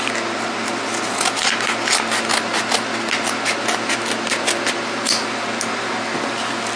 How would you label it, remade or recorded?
recorded